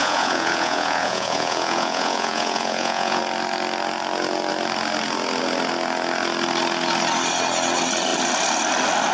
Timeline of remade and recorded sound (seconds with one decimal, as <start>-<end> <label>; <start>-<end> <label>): 0.0-3.2 remade; 3.2-9.1 recorded